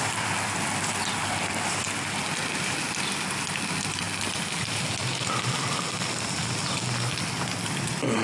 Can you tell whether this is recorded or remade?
recorded